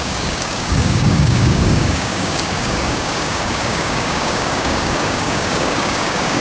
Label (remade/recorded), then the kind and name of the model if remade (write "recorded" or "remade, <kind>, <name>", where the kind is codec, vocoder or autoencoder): remade, codec, DAC